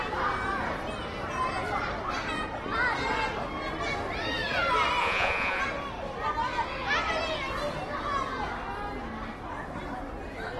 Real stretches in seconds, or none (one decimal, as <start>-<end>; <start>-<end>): 0.0-5.0; 5.6-10.6